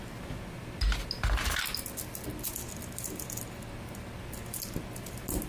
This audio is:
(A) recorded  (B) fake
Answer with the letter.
A